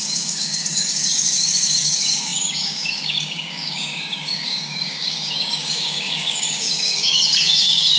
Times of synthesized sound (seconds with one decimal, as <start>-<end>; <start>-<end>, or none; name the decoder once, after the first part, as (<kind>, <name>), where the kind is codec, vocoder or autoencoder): 0.0-8.0 (codec, DAC)